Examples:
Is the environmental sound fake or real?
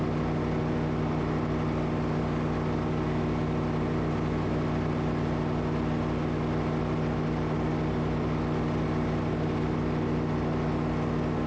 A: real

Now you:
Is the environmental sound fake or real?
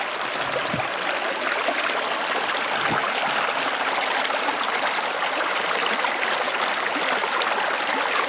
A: real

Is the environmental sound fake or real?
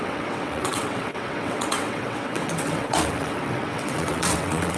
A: fake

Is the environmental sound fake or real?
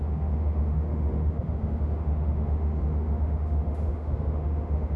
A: fake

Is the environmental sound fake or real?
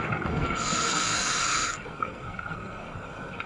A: fake